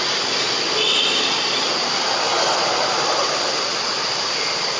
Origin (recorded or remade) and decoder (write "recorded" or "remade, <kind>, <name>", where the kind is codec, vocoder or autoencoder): recorded